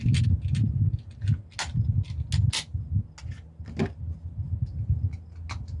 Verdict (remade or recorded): recorded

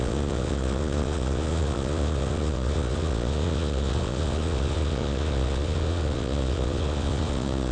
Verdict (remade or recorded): remade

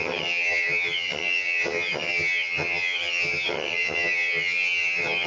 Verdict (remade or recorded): remade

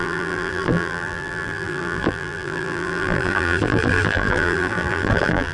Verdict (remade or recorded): remade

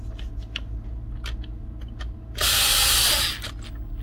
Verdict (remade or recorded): recorded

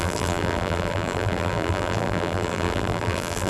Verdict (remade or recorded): remade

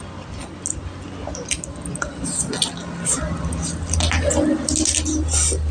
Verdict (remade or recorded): recorded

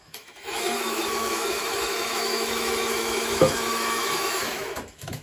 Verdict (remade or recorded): remade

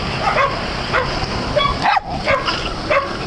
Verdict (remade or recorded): recorded